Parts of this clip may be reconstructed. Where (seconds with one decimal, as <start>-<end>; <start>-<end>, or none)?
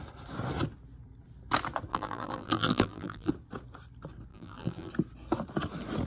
1.9-3.3; 4.3-4.9